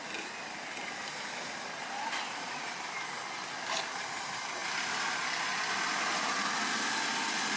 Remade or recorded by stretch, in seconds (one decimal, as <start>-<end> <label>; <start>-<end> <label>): 0.0-7.6 recorded